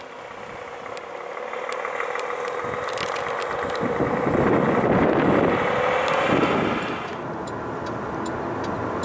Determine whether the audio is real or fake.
real